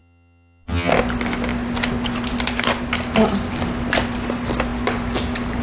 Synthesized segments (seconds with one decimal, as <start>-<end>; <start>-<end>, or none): 0.0-0.9